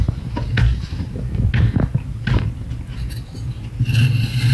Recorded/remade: recorded